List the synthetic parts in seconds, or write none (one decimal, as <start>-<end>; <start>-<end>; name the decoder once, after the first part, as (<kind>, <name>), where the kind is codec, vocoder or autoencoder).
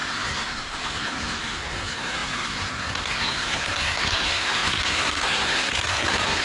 0.0-6.4 (codec, SNAC)